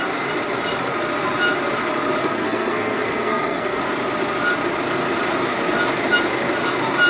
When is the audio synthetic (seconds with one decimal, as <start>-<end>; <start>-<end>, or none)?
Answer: 2.2-3.8